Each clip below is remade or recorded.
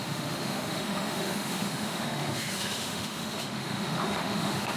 remade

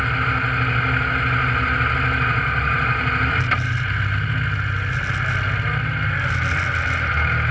recorded